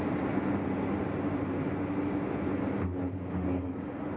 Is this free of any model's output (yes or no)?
yes